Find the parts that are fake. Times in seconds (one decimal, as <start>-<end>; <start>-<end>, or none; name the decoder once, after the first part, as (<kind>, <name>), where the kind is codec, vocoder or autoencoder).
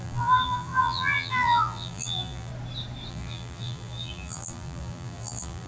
0.0-2.5 (vocoder, BigVGAN v2); 3.1-5.7